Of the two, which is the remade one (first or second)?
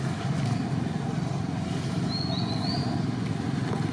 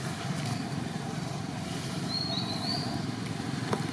second